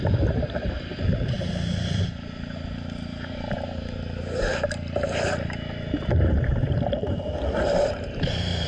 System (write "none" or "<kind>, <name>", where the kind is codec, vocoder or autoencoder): vocoder, BigVGAN v2